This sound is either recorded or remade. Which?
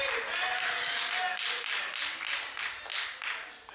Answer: recorded